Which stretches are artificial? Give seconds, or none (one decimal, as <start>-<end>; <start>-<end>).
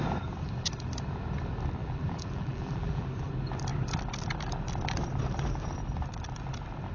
1.8-3.3